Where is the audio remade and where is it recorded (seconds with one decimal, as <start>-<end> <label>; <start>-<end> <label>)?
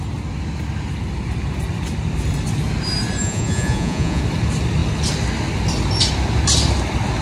0.0-3.2 recorded; 3.2-4.2 remade; 4.2-7.2 recorded